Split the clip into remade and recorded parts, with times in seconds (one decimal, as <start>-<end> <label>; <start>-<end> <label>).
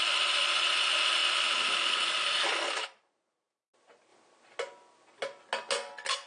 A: 0.0-6.3 recorded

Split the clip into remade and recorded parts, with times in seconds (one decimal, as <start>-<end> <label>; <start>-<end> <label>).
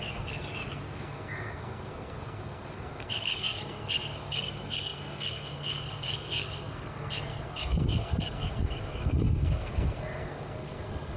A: 0.0-11.2 remade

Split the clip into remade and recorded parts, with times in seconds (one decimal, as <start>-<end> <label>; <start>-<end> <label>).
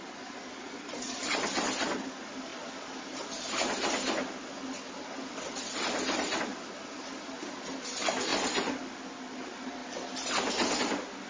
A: 0.0-11.3 recorded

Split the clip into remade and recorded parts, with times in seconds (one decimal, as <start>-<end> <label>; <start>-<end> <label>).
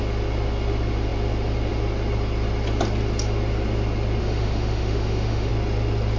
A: 0.0-4.2 recorded; 4.2-5.5 remade; 5.5-6.2 recorded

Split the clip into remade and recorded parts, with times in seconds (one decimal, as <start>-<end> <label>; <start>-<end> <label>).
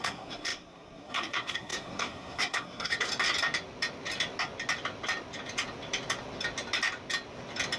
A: 0.0-3.1 remade; 3.1-7.8 recorded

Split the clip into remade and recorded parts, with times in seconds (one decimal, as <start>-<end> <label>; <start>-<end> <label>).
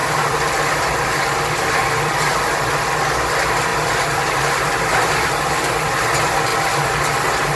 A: 0.0-2.2 remade; 2.2-3.7 recorded; 3.7-5.5 remade; 5.5-7.6 recorded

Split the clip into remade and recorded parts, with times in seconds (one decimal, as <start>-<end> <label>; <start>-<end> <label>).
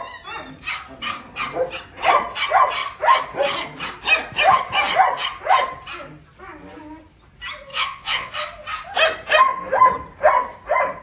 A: 0.0-7.7 recorded; 7.7-8.3 remade; 8.3-11.0 recorded